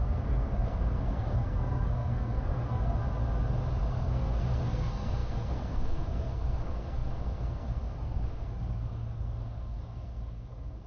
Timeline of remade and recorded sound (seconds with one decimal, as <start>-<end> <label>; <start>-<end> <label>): 0.0-3.0 remade; 3.0-3.9 recorded; 3.9-10.9 remade